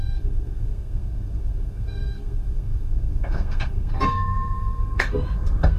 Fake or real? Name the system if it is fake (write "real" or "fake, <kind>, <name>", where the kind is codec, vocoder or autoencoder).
fake, codec, SNAC